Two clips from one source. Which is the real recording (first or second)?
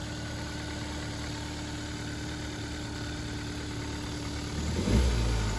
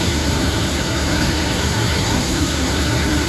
first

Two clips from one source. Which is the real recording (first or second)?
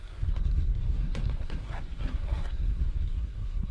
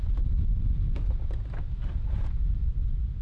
second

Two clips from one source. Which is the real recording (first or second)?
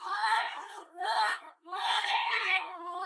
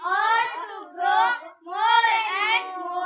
second